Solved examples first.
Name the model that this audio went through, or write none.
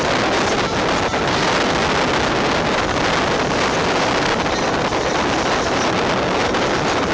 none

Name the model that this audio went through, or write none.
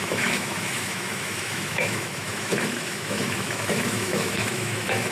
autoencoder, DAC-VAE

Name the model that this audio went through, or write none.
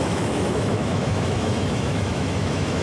autoencoder, DAC-VAE